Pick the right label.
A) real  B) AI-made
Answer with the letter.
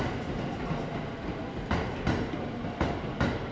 A